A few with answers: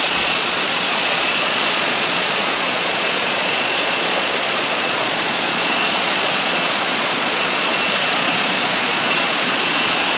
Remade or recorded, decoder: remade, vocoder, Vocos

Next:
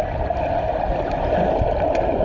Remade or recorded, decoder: recorded